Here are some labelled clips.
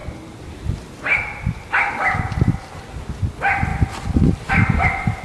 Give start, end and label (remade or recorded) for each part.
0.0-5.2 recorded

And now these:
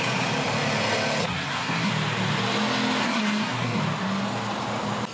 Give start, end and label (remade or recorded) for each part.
0.0-1.2 recorded; 1.2-1.9 remade; 1.9-3.0 recorded; 3.0-3.8 remade; 3.8-5.1 recorded

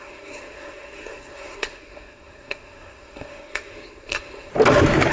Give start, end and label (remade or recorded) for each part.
0.0-4.5 remade; 4.5-5.1 recorded

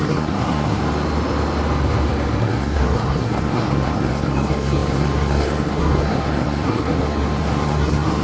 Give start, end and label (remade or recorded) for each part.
0.0-0.8 remade; 0.8-2.4 recorded; 2.4-8.2 remade

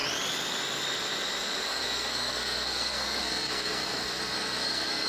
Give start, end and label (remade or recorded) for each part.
0.0-1.7 recorded; 1.7-5.1 remade

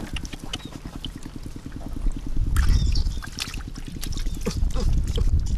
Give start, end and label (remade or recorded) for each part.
0.0-5.6 recorded

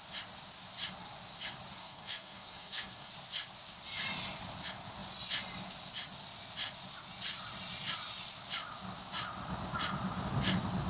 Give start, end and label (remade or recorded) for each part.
0.0-1.8 recorded; 1.8-3.1 remade; 3.1-10.9 recorded